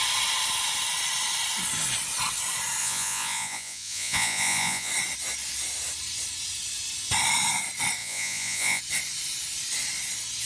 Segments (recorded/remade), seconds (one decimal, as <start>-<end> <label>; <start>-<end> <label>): 0.0-2.8 recorded; 2.8-4.9 remade; 4.9-8.0 recorded; 8.0-8.8 remade; 8.8-10.5 recorded